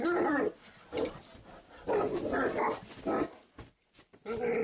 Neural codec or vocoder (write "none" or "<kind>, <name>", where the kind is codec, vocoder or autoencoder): none